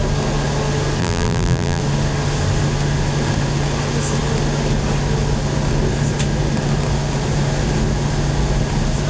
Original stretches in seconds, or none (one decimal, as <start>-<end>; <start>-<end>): 0.0-1.0; 1.8-9.1